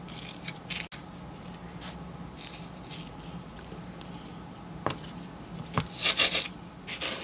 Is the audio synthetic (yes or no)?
no